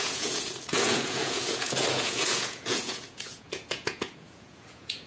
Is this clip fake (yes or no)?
yes